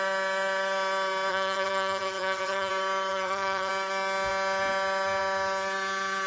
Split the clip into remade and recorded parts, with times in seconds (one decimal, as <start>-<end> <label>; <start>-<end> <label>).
0.0-1.3 recorded; 1.3-2.7 remade; 2.7-3.1 recorded; 3.1-3.7 remade; 3.7-6.3 recorded